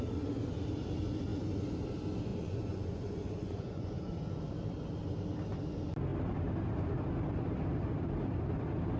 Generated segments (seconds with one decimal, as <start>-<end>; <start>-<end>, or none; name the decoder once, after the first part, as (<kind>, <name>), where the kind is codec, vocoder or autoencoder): 2.3-4.2 (vocoder, Vocos)